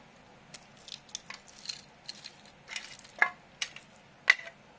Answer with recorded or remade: recorded